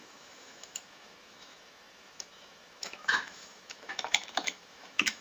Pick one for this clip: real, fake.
fake